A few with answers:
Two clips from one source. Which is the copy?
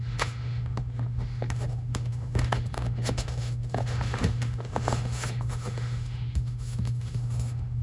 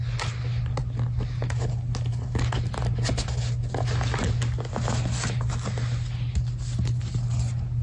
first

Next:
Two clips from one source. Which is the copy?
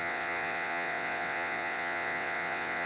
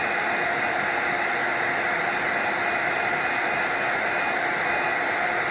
first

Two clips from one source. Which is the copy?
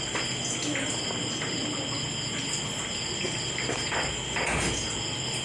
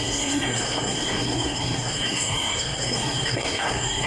second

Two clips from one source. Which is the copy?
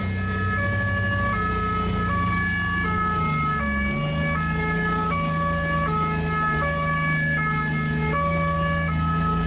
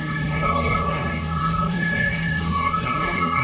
second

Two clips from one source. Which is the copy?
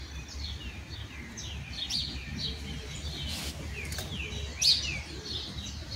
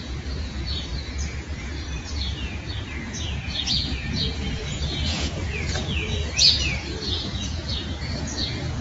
second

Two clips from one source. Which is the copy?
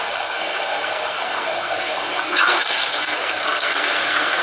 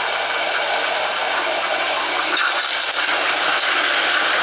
first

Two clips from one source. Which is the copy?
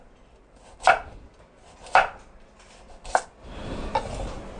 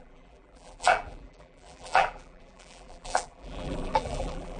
second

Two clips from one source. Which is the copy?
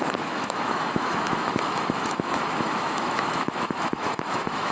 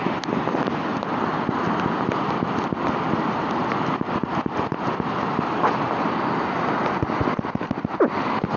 first